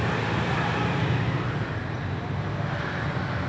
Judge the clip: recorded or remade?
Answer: recorded